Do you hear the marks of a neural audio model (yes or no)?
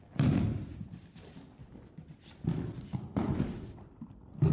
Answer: no